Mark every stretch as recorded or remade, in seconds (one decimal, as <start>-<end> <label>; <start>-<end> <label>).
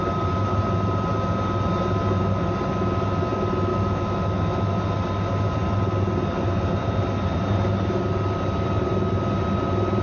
0.0-3.7 recorded; 3.7-4.8 remade; 4.8-10.0 recorded